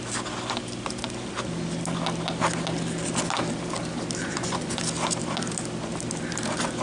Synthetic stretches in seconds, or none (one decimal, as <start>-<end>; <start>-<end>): 4.2-4.8